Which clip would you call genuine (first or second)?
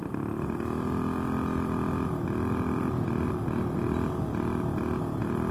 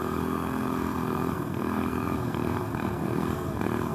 first